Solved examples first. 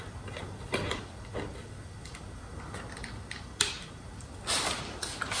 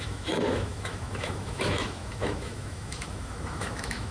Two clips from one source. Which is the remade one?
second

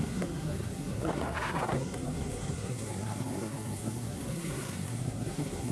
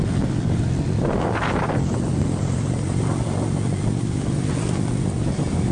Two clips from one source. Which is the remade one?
first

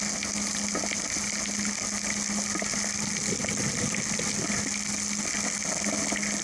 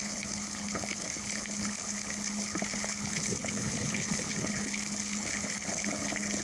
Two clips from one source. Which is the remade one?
second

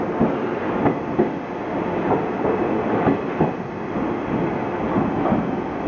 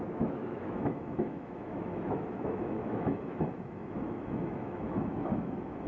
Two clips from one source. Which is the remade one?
second